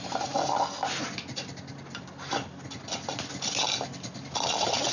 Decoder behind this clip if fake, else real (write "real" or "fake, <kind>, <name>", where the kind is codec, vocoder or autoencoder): real